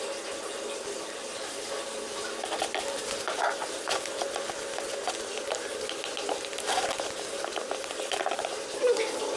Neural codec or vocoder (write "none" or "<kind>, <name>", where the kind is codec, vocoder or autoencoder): none